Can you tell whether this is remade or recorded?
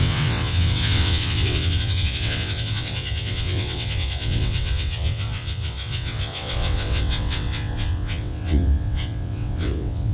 remade